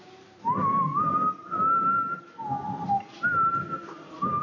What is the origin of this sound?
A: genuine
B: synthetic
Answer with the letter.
A